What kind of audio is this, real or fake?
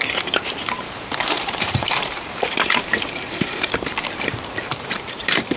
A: fake